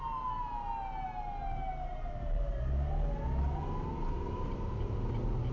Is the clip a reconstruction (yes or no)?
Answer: no